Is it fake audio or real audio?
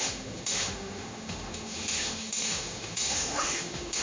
fake